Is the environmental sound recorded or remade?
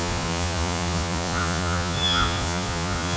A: remade